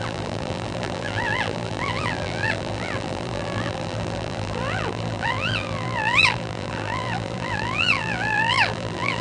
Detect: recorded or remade remade